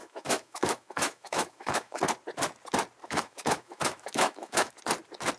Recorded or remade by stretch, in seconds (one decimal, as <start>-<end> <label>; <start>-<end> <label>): 0.0-2.0 remade; 2.0-3.0 recorded; 3.0-4.7 remade; 4.7-5.4 recorded